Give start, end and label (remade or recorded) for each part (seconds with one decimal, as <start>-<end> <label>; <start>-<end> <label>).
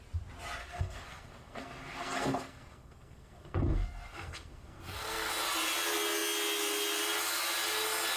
0.0-0.6 recorded; 0.6-5.3 remade; 5.3-8.2 recorded